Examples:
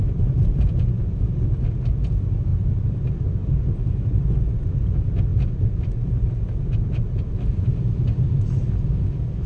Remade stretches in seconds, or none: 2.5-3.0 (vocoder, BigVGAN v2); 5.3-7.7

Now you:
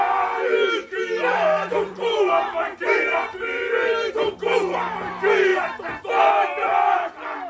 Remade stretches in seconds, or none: 0.8-4.1 (vocoder, BigVGAN v2); 6.7-7.5

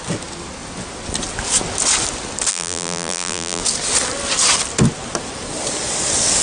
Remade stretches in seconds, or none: 2.5-3.6 (vocoder, BigVGAN v2)

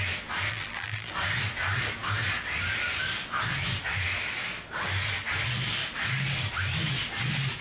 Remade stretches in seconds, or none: 0.5-1.1 (vocoder, BigVGAN v2)

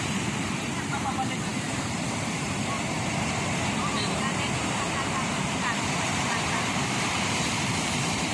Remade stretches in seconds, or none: 0.0-8.3 (vocoder, BigVGAN v2)